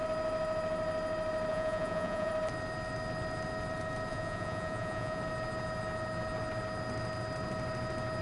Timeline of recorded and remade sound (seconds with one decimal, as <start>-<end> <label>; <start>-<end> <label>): 0.0-1.5 recorded; 1.5-2.3 remade; 2.3-4.1 recorded; 4.1-5.2 remade; 5.2-8.2 recorded